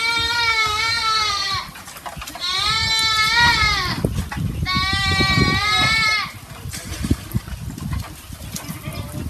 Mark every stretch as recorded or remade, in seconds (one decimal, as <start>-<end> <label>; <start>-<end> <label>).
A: 0.0-0.5 recorded; 0.5-1.5 remade; 1.5-9.3 recorded